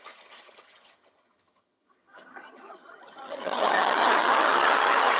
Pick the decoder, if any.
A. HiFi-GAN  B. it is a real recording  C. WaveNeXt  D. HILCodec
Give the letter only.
A